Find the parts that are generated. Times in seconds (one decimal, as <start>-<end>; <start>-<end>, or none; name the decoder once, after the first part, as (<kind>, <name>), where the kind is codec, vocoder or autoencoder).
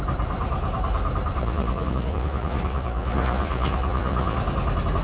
1.4-4.4 (vocoder, Vocos)